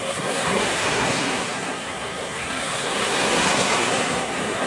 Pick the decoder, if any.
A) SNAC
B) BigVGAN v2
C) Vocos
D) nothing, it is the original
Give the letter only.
A